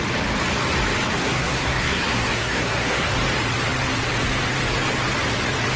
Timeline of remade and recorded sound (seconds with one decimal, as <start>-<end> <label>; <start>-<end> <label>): 0.0-1.2 recorded; 1.2-3.1 remade; 3.1-5.8 recorded